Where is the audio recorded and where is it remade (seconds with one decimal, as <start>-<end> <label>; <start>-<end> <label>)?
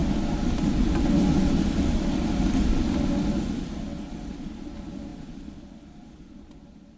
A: 0.0-7.0 recorded